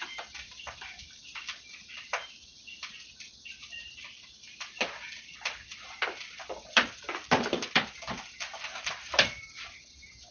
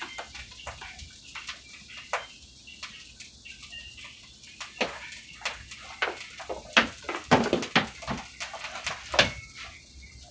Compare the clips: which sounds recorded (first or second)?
second